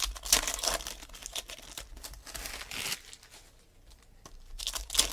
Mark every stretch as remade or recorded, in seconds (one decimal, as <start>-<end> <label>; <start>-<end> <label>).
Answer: 0.0-5.1 recorded